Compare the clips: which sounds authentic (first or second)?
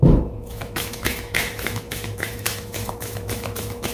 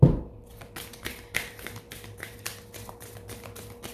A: second